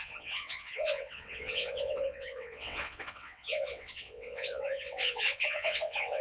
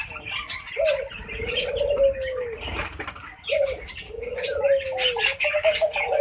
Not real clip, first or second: first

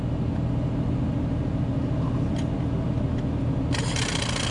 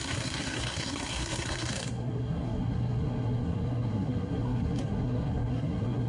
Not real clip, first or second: second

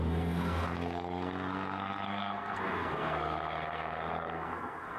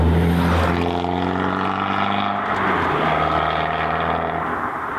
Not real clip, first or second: first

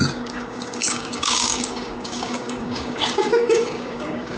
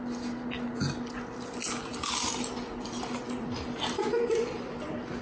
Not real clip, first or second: first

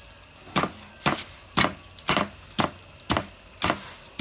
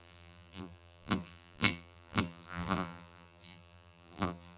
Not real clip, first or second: second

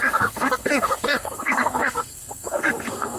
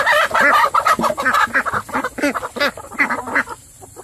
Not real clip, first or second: first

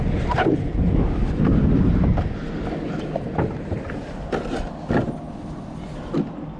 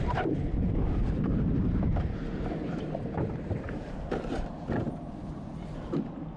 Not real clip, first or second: second